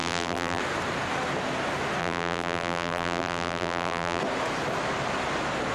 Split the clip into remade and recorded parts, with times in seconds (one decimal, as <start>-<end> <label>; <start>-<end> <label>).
0.0-0.6 remade; 0.6-2.0 recorded; 2.0-4.2 remade; 4.2-5.7 recorded